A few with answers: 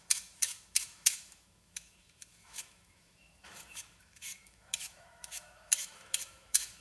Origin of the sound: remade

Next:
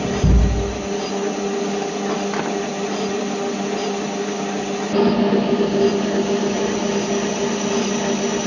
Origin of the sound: recorded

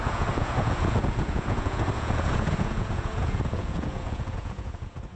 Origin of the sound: remade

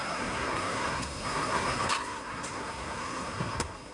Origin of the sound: remade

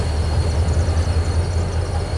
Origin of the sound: recorded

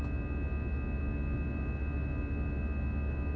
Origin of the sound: recorded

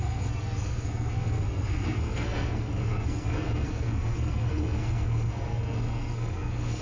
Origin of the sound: remade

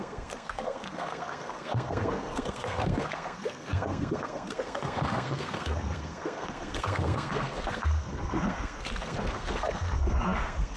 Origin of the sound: remade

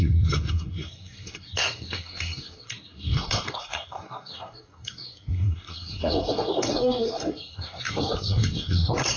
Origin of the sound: remade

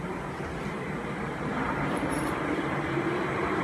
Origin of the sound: remade